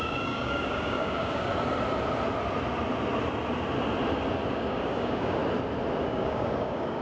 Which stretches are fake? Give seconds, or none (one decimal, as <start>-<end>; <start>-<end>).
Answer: 0.0-1.5; 4.5-5.4; 6.0-7.0